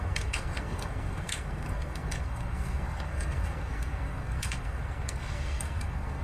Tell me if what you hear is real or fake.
fake